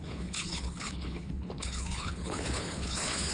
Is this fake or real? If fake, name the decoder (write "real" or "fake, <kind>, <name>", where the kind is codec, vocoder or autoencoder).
fake, codec, HILCodec